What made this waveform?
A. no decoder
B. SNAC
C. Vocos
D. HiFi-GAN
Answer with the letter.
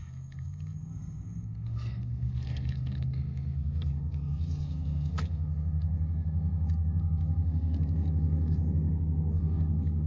B